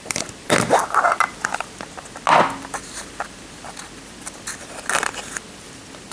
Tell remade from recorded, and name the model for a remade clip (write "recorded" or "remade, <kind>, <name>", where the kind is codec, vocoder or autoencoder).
recorded